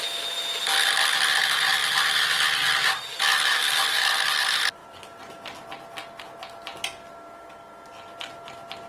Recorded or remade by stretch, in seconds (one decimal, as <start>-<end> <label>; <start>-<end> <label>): 0.0-8.9 recorded